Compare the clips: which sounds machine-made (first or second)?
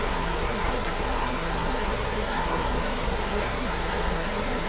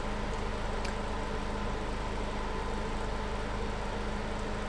first